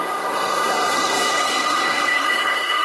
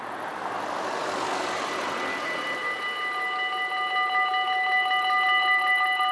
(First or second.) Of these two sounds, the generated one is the first